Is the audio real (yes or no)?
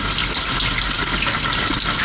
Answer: yes